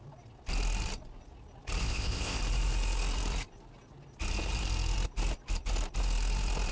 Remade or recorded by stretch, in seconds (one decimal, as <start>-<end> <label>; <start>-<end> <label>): 0.0-1.8 recorded; 1.8-2.4 remade; 2.4-6.7 recorded